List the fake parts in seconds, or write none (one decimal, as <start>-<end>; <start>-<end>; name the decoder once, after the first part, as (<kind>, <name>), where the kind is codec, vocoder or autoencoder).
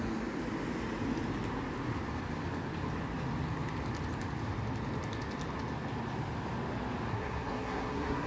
7.1-8.3 (codec, SNAC)